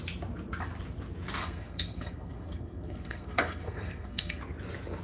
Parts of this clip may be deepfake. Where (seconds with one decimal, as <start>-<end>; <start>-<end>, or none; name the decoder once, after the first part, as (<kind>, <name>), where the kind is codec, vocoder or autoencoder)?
1.4-4.4 (codec, SNAC)

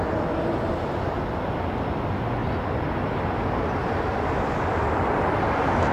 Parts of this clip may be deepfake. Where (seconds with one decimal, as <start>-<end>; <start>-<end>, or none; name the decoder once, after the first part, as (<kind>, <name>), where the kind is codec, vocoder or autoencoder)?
none

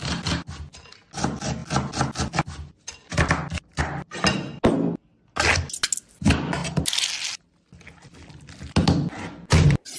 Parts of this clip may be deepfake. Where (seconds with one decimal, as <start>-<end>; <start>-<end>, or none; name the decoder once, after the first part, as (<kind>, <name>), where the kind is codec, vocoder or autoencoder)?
none

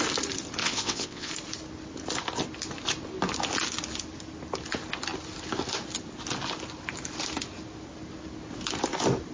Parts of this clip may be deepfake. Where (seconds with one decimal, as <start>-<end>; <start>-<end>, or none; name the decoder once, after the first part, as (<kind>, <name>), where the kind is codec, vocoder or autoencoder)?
0.6-1.3 (vocoder, WaveNeXt)

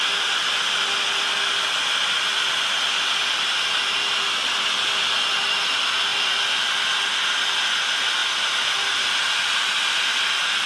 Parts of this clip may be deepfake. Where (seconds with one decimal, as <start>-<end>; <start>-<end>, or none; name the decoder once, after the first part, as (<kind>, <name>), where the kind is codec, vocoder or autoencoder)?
none

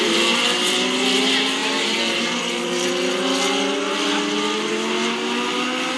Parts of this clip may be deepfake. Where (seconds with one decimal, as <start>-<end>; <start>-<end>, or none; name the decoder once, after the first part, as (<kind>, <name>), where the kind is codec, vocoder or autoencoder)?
none

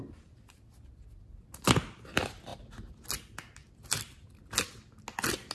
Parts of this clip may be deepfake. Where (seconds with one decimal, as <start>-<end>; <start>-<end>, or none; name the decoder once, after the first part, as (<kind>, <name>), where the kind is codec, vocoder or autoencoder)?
none